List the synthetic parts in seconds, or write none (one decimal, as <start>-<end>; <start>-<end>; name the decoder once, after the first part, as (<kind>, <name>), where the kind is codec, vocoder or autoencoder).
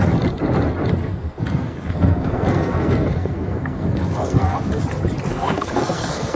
1.0-4.8 (codec, SNAC); 5.3-6.4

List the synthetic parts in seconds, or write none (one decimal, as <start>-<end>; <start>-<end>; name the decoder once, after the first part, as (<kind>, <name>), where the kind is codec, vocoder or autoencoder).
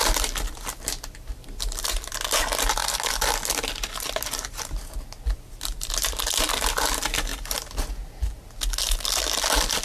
none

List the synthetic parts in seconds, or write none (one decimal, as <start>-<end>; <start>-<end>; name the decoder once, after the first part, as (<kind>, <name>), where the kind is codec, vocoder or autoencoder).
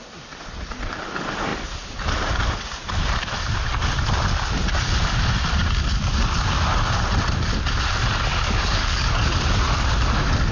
8.3-9.1 (codec, DAC)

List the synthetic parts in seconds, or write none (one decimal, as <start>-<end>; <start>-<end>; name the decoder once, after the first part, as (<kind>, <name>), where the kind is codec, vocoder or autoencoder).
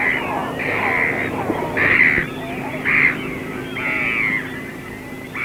none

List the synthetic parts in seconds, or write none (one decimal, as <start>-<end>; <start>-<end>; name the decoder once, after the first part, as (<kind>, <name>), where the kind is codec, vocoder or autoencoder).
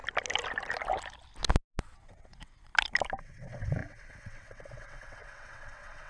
1.8-2.7 (vocoder, WaveNeXt); 3.2-6.1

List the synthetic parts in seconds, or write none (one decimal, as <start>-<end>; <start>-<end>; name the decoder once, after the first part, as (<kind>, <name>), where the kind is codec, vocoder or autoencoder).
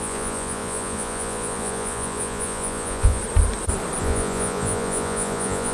0.0-3.2 (vocoder, Vocos); 4.0-5.7